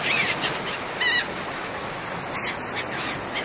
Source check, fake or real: real